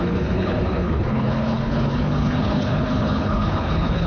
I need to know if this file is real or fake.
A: fake